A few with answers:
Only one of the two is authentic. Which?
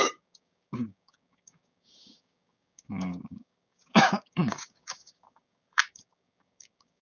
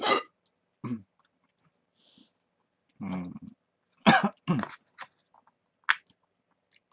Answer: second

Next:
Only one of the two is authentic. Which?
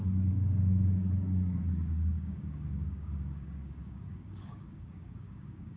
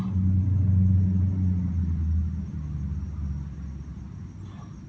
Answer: second